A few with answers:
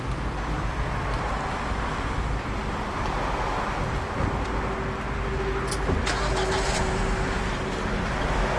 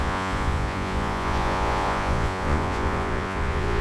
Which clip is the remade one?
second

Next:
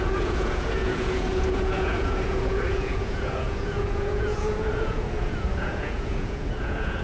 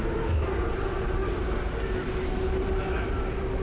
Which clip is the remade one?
first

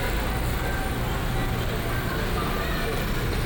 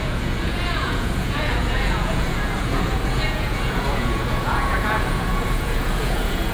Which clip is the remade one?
second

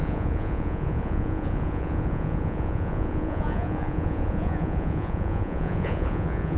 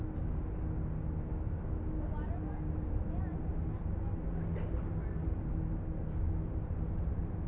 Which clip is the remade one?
first